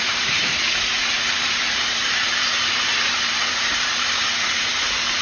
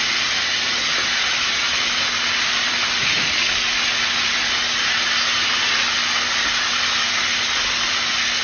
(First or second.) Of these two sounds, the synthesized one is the first